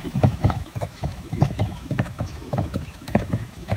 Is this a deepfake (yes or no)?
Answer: yes